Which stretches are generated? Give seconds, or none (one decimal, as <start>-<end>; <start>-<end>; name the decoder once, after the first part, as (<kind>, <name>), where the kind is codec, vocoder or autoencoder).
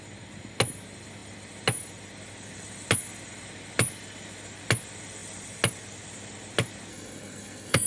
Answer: 6.9-7.9 (codec, SNAC)